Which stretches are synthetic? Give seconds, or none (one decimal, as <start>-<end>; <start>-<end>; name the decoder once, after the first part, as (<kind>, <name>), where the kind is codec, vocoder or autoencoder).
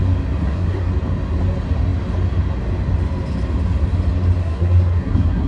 0.4-0.9 (codec, SNAC); 4.4-5.5